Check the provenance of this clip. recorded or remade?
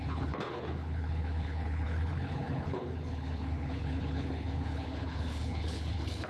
remade